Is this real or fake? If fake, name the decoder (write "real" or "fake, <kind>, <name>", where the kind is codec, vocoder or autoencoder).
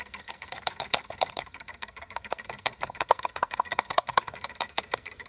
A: fake, codec, SNAC